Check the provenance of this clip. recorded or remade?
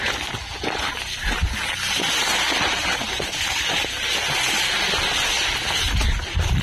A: recorded